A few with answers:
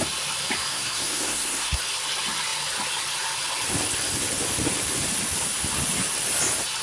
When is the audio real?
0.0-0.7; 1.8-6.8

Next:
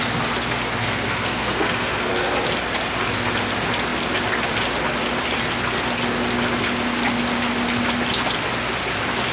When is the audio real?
0.0-0.8; 2.1-9.3

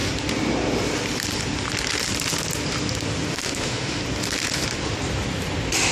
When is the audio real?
0.0-3.3; 4.0-5.9

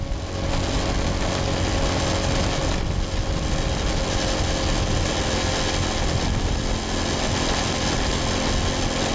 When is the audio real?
0.0-9.1

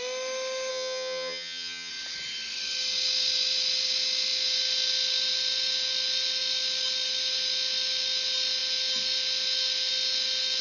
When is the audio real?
0.0-0.7; 1.9-10.6